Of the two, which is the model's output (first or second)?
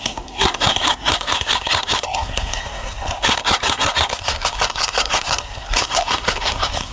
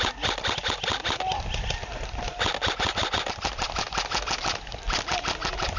first